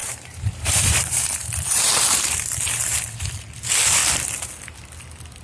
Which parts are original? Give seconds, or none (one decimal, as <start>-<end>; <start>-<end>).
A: 3.0-5.4